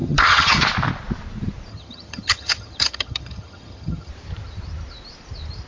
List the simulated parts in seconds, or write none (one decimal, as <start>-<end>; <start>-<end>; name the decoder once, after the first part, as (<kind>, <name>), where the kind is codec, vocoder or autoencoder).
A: 0.0-0.6 (vocoder, HiFi-GAN); 1.7-4.1